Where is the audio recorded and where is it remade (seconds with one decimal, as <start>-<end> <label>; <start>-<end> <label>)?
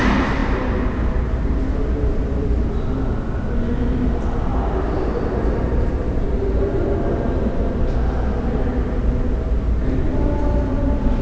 0.0-11.2 recorded